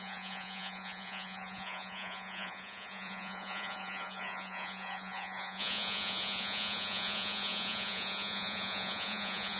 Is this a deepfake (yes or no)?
yes